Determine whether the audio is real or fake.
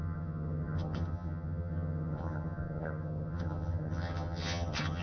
fake